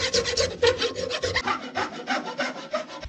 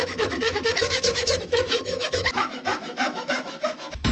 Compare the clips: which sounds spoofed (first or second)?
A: second